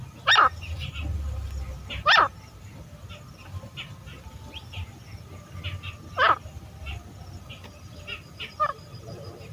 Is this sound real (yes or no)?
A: no